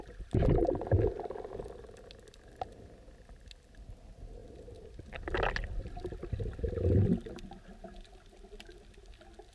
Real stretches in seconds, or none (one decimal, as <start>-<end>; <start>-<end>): 0.0-9.5